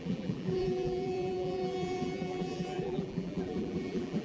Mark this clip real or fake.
fake